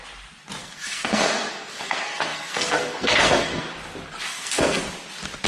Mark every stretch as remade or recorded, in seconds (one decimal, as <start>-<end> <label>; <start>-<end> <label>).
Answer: 0.0-0.6 recorded; 0.6-3.7 remade; 3.7-4.3 recorded; 4.3-4.8 remade; 4.8-5.5 recorded